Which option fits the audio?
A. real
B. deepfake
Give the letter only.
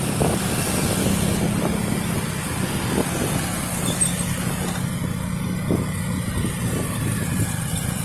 A